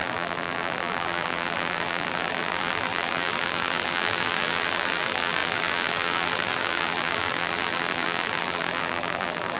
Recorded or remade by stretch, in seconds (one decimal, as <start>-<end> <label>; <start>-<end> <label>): 0.0-9.6 remade